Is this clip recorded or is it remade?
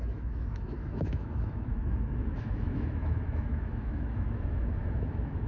remade